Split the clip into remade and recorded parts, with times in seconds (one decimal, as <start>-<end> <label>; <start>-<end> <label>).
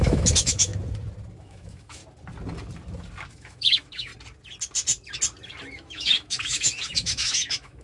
0.0-0.7 remade; 0.7-1.4 recorded; 1.4-2.0 remade; 2.0-3.3 recorded; 3.3-4.1 remade; 4.1-5.6 recorded; 5.6-7.8 remade